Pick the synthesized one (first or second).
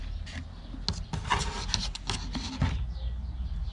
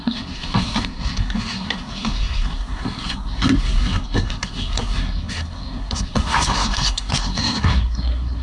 second